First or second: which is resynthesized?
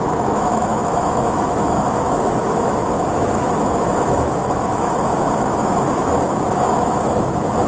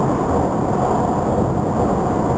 first